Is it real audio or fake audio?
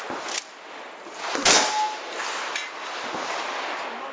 real